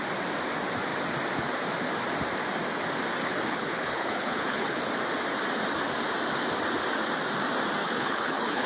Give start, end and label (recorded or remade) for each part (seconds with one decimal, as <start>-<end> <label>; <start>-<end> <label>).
0.0-3.2 recorded; 3.2-4.9 remade; 4.9-7.8 recorded; 7.8-8.7 remade